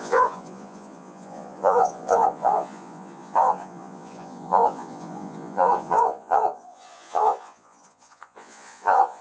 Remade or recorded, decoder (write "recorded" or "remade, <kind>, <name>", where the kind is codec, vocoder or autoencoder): remade, vocoder, Vocos